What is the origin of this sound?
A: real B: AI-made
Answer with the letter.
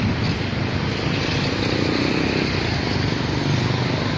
A